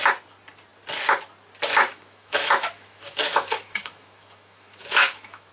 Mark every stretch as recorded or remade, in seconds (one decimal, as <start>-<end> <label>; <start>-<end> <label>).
0.0-1.9 recorded; 1.9-5.5 remade